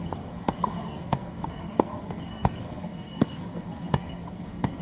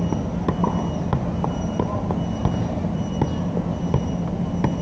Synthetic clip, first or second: first